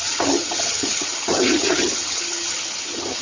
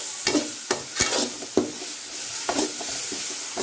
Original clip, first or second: second